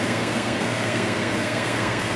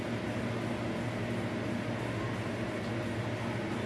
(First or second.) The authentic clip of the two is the second